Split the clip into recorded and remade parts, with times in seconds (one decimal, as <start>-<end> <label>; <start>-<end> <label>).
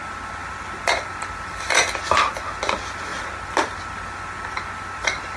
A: 0.0-5.4 recorded